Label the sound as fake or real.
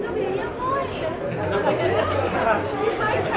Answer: real